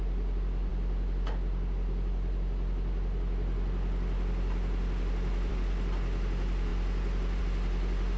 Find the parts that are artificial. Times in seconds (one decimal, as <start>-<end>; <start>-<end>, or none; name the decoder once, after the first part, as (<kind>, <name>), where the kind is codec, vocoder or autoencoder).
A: none